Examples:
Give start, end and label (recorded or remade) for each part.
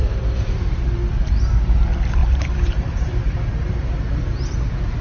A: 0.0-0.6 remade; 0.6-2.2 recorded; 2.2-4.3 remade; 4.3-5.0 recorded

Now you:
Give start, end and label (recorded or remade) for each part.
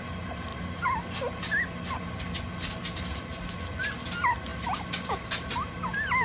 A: 0.0-4.5 recorded; 4.5-5.7 remade; 5.7-6.2 recorded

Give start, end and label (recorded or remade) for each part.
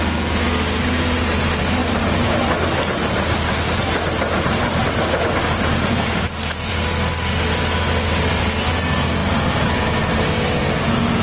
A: 0.0-1.8 recorded; 1.8-6.7 remade; 6.7-11.2 recorded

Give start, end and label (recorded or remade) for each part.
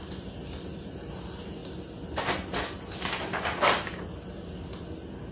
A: 0.0-5.3 recorded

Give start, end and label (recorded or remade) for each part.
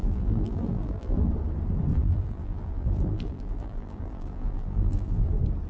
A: 0.0-1.3 remade; 1.3-1.9 recorded; 1.9-5.3 remade; 5.3-5.7 recorded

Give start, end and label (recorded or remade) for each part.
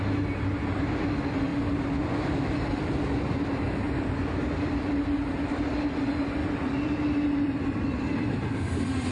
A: 0.0-6.4 recorded; 6.4-7.7 remade; 7.7-9.1 recorded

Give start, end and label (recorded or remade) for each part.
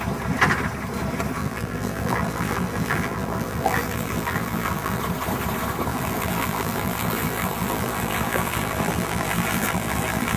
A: 0.0-1.4 recorded; 1.4-5.0 remade; 5.0-5.9 recorded; 5.9-10.4 remade